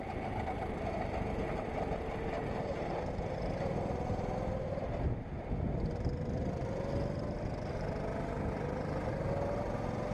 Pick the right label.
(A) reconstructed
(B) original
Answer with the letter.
B